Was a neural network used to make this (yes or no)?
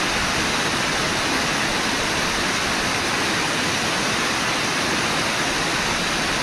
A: no